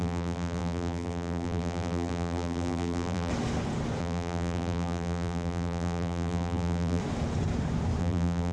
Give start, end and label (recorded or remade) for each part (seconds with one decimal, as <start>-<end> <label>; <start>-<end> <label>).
0.0-3.3 remade; 3.3-4.0 recorded; 4.0-7.0 remade; 7.0-8.0 recorded; 8.0-8.5 remade